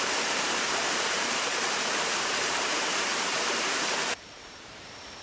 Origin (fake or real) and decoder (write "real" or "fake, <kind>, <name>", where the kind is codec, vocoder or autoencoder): fake, vocoder, BigVGAN v2